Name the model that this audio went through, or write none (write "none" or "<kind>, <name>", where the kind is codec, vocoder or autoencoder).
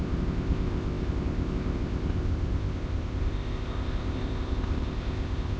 codec, ZipCodec